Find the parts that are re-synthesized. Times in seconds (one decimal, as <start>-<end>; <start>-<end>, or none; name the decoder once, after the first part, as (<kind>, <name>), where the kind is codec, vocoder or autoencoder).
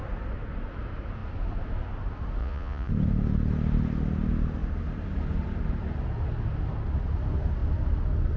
2.4-2.9 (vocoder, Vocos)